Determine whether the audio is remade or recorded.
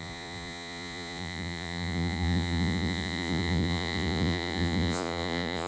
remade